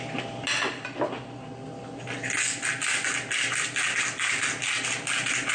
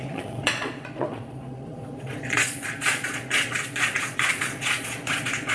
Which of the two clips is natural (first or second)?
first